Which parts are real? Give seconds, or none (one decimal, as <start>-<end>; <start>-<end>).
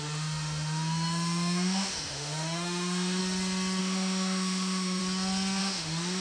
3.2-3.8; 5.0-5.6